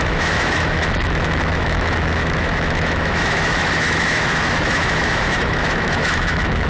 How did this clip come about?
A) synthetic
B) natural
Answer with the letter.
A